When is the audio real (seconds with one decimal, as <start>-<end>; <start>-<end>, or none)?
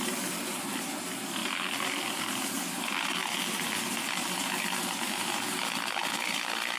0.0-1.4; 2.5-6.0